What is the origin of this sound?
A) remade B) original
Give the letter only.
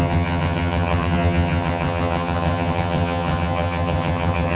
A